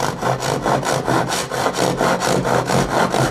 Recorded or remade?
recorded